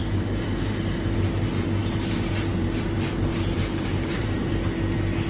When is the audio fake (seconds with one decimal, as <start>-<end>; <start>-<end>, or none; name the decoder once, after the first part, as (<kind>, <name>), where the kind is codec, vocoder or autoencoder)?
0.0-0.8 (vocoder, BigVGAN v2); 3.3-4.5